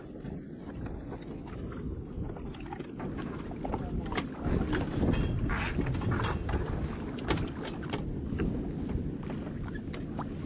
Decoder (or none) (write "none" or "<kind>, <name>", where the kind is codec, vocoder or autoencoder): none